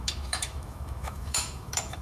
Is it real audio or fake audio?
fake